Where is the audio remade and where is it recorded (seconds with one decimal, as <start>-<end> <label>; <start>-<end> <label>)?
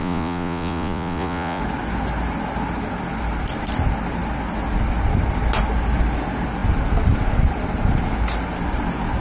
0.0-1.6 remade; 1.6-9.2 recorded